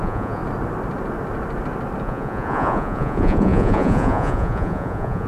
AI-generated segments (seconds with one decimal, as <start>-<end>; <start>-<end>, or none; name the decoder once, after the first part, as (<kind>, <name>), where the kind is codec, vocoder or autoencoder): 0.0-0.4 (vocoder, Vocos); 2.0-5.3